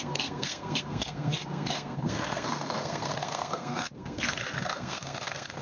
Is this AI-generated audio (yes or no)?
yes